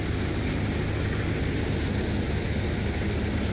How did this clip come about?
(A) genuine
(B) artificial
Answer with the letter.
A